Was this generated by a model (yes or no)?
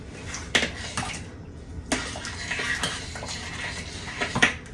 no